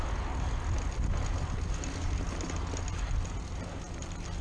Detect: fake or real real